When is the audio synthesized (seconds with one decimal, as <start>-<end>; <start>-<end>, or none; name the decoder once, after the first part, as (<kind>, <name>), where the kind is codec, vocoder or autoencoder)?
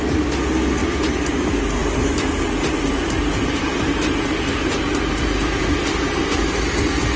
0.8-1.4 (vocoder, BigVGAN v2); 1.8-6.1